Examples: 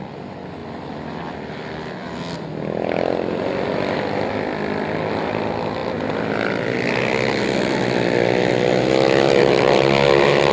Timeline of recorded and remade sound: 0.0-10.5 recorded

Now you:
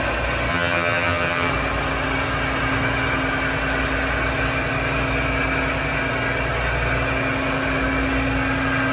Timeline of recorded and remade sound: 0.0-0.5 recorded; 0.5-1.5 remade; 1.5-8.9 recorded